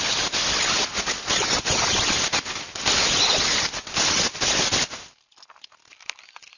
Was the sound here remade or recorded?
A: recorded